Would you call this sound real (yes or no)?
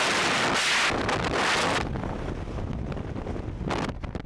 yes